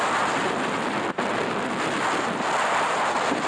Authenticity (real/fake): real